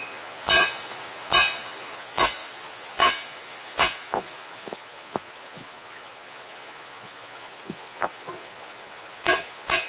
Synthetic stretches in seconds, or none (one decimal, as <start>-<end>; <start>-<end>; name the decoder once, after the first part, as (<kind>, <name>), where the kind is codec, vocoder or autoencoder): 0.0-9.9 (vocoder, Vocos)